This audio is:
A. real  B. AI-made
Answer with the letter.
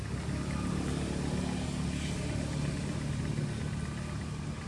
A